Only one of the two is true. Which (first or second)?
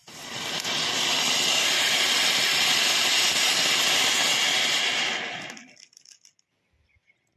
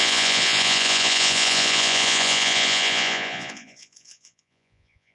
first